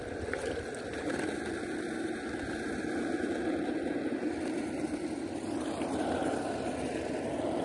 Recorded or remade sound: recorded